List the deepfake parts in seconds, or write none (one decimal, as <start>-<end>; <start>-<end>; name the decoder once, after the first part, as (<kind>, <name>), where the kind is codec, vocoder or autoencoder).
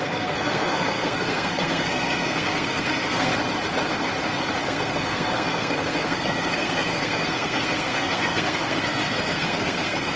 0.0-3.3 (codec, SNAC); 4.6-10.2